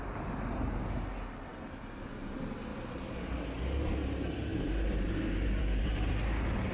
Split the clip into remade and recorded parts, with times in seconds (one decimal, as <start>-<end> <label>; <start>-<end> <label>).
0.0-2.7 recorded; 2.7-3.6 remade; 3.6-4.5 recorded; 4.5-6.2 remade; 6.2-6.7 recorded